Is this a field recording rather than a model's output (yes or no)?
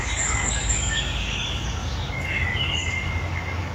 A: no